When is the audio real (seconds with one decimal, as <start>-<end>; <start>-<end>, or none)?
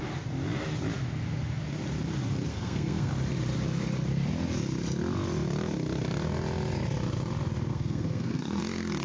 0.0-2.5; 3.1-7.7; 8.6-9.0